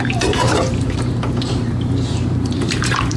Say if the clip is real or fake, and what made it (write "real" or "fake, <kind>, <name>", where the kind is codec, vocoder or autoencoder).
fake, vocoder, BigVGAN v2